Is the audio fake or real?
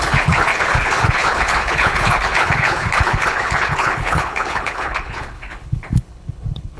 fake